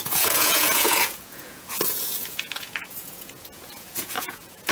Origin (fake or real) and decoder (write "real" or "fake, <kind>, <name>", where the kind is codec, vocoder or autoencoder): fake, vocoder, Vocos